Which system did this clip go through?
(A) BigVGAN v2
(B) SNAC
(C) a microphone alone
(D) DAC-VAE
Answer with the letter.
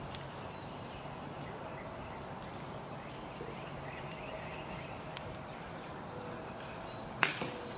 C